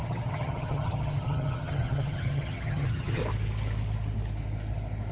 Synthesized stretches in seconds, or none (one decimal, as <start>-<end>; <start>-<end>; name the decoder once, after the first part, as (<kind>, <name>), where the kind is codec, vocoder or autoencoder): 0.0-3.2 (vocoder, HiFi-GAN)

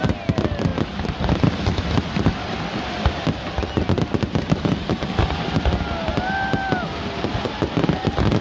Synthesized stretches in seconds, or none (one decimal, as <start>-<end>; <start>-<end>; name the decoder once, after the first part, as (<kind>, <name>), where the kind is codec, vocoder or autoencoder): none

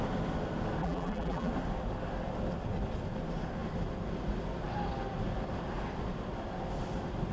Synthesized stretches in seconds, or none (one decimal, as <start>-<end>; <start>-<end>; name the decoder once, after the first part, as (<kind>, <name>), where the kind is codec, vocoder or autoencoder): 0.8-1.5 (vocoder, BigVGAN v2)

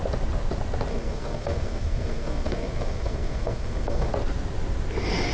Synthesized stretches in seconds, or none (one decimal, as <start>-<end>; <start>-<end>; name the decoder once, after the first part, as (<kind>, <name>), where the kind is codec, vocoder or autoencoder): 0.9-4.1 (codec, SNAC)

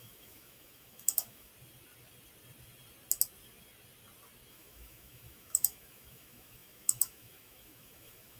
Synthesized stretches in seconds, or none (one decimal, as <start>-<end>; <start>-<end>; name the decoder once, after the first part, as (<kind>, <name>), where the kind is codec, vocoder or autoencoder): 0.0-1.5 (autoencoder, DAC-VAE); 4.5-8.4